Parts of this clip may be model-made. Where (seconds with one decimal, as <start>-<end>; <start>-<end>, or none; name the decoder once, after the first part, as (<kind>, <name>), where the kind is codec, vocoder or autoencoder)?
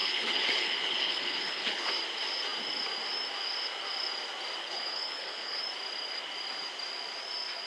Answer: 0.0-1.9 (codec, HILCodec); 4.6-5.6